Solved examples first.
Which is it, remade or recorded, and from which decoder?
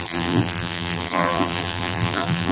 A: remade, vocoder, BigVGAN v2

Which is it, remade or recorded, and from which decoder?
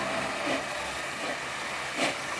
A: recorded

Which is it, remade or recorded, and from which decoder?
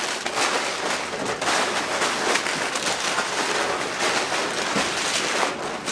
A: recorded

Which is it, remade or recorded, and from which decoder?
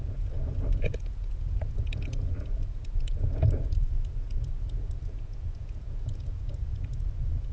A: remade, vocoder, Vocos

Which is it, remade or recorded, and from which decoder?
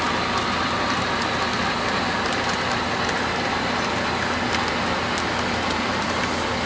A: recorded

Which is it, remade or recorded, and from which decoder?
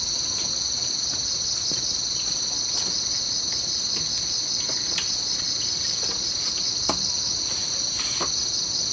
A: recorded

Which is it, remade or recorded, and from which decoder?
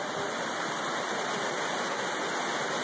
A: recorded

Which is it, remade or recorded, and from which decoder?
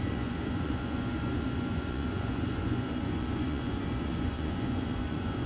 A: remade, vocoder, Vocos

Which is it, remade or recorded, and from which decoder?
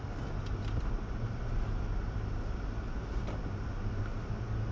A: recorded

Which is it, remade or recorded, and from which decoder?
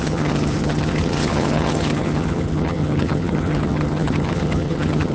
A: remade, vocoder, HiFi-GAN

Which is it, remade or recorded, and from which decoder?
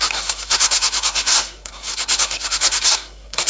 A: remade, codec, SNAC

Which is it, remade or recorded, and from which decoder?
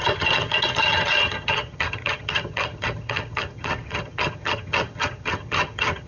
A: remade, vocoder, HiFi-GAN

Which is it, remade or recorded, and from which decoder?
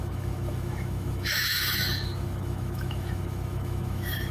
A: remade, autoencoder, DAC-VAE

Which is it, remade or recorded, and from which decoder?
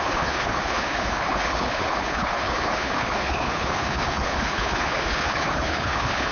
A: remade, codec, HILCodec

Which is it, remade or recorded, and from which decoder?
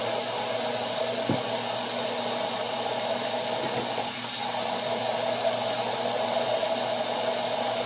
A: recorded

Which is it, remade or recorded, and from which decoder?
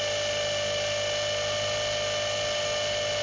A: recorded